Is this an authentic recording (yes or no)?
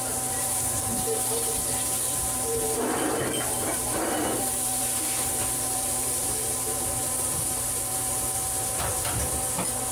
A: no